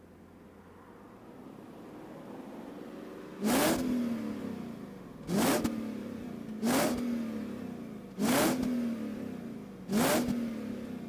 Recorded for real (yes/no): yes